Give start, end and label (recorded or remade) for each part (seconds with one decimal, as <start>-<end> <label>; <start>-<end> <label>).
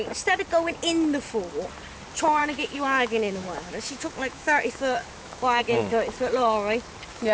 0.0-2.4 recorded; 2.4-5.6 remade; 5.6-7.3 recorded